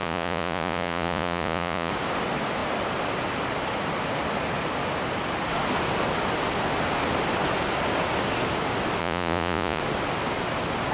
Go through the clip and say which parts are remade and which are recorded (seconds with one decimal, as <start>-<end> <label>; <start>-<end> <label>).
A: 0.0-1.9 remade; 1.9-9.0 recorded; 9.0-9.8 remade; 9.8-10.9 recorded